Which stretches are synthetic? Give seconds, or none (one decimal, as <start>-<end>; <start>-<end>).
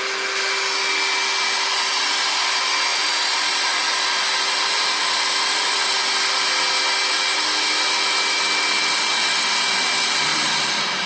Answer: none